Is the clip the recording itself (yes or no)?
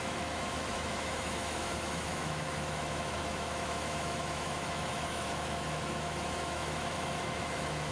no